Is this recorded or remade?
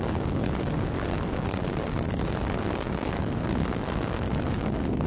remade